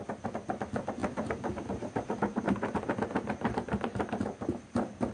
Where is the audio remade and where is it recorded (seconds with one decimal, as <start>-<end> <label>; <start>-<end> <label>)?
0.0-1.0 recorded; 1.0-4.1 remade; 4.1-5.1 recorded